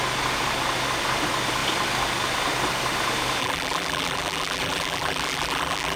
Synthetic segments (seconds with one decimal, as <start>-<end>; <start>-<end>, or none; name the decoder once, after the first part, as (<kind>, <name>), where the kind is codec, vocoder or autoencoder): 3.4-6.0 (vocoder, BigVGAN v2)